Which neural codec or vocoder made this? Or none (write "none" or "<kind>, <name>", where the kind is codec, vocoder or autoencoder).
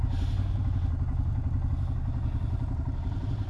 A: none